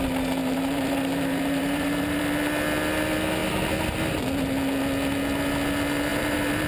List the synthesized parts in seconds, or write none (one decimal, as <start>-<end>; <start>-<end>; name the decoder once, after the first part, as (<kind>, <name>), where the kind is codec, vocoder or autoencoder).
0.4-2.2 (vocoder, BigVGAN v2); 6.1-6.7